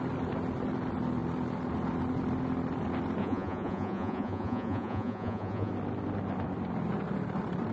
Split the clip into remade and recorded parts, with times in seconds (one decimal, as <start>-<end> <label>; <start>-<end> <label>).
0.0-3.2 recorded; 3.2-5.7 remade; 5.7-7.7 recorded